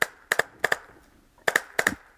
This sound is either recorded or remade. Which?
recorded